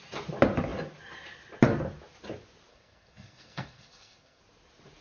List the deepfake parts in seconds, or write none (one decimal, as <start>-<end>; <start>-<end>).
2.7-4.4